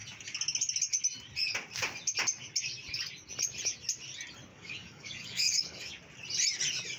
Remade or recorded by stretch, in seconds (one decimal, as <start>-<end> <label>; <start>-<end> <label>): 0.0-4.5 recorded; 4.5-5.9 remade; 5.9-7.0 recorded